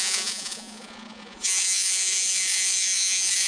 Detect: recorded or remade remade